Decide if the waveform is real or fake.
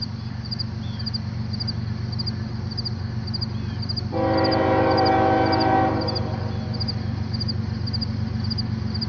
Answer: real